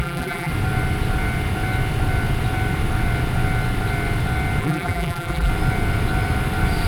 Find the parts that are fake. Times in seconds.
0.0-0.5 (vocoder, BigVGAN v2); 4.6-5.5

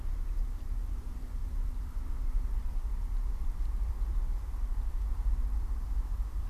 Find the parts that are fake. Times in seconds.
1.4-5.3 (vocoder, BigVGAN v2)

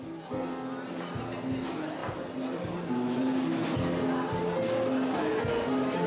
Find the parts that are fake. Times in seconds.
none

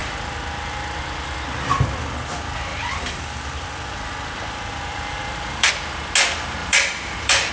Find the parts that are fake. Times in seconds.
2.7-5.7 (vocoder, BigVGAN v2); 6.6-7.5

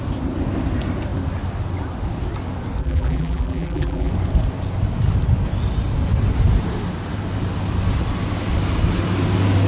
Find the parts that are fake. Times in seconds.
2.8-4.1 (vocoder, BigVGAN v2)